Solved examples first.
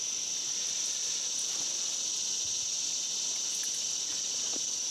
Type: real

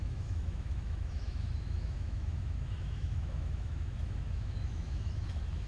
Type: fake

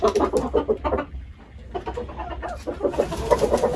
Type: real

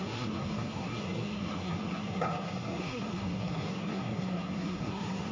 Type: fake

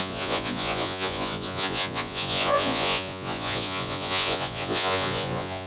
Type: fake